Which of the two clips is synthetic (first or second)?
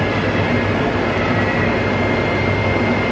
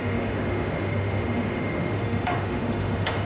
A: second